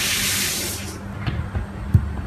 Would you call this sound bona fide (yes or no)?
yes